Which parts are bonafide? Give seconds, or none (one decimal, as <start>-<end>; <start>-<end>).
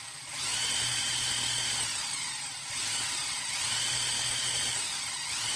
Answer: 0.0-0.5; 1.3-1.9; 4.8-5.6